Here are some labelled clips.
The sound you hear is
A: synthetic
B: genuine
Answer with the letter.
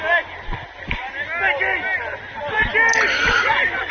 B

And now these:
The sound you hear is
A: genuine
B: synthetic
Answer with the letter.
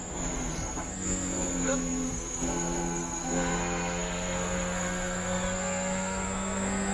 B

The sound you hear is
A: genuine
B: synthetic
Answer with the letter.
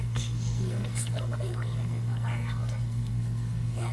B